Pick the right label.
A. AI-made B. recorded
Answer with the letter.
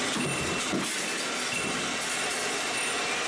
B